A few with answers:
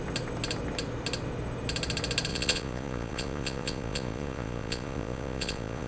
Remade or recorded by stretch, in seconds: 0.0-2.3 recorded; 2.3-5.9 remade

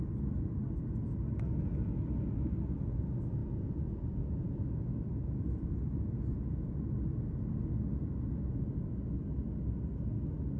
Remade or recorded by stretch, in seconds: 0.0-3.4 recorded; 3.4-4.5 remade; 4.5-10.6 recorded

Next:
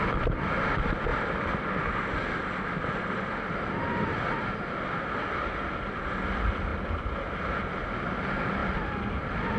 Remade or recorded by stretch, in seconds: 0.0-9.6 recorded

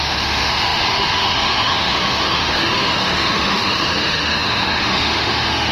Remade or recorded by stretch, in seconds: 0.0-5.7 remade